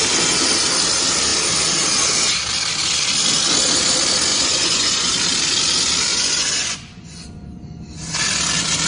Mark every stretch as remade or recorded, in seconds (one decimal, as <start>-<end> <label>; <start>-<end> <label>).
0.0-4.3 recorded; 4.3-5.1 remade; 5.1-6.1 recorded; 6.1-7.3 remade; 7.3-8.9 recorded